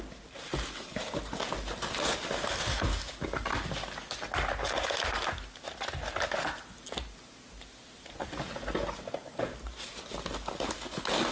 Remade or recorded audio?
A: recorded